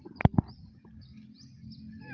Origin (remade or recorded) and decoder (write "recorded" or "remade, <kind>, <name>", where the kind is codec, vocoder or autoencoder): recorded